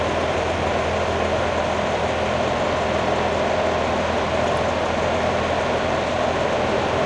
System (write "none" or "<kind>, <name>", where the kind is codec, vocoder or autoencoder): none